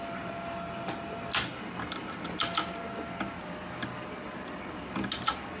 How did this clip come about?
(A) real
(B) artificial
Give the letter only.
A